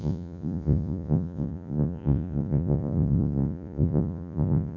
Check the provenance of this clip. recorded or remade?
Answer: remade